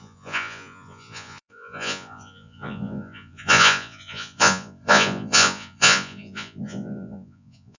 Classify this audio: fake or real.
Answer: fake